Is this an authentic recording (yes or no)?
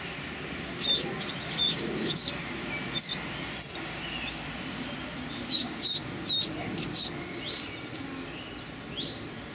yes